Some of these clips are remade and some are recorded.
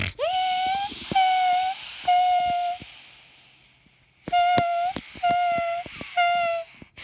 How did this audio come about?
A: recorded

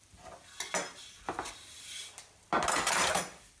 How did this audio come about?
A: recorded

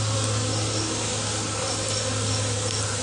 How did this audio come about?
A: recorded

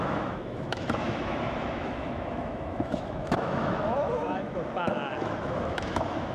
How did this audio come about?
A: remade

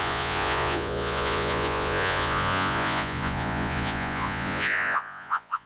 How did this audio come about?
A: remade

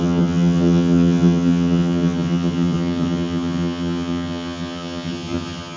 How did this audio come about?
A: remade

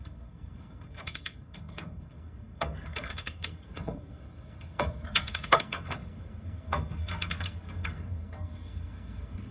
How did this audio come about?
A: remade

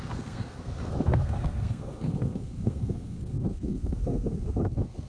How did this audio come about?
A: remade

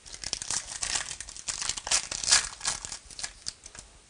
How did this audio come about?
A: recorded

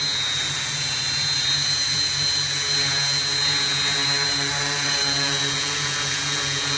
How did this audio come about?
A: remade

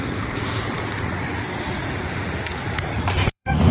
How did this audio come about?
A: remade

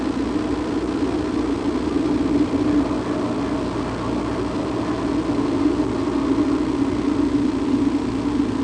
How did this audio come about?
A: recorded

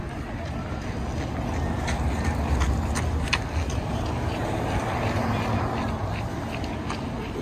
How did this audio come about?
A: recorded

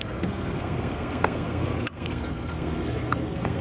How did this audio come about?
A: remade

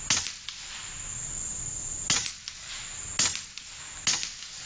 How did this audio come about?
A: recorded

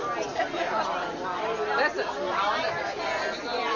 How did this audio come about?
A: recorded